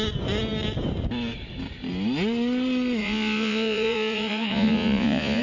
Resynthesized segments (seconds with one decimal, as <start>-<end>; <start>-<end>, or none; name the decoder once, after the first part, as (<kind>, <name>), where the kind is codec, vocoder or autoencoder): 3.0-5.4 (vocoder, Vocos)